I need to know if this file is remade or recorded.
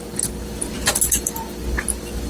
recorded